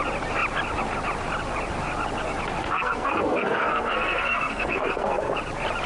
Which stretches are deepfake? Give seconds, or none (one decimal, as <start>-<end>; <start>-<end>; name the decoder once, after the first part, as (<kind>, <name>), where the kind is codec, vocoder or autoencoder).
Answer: 2.6-5.3 (codec, SNAC)

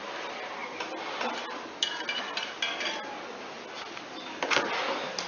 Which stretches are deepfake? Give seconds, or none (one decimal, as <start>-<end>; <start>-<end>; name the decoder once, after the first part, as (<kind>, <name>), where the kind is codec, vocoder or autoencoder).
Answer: none

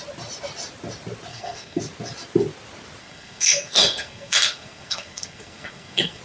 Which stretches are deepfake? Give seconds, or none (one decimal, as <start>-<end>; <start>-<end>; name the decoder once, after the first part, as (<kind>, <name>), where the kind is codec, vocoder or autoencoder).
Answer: 1.3-1.8 (codec, SNAC); 3.0-6.2